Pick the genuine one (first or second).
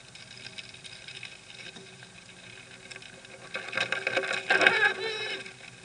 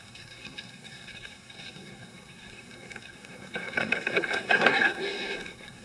first